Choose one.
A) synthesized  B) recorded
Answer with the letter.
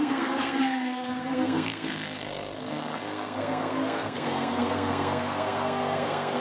A